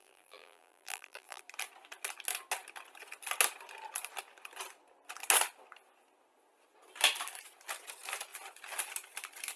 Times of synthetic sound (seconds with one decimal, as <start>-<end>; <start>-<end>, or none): 0.0-1.4